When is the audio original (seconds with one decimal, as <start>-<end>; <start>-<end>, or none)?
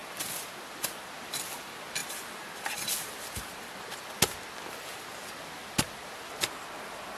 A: 0.0-7.2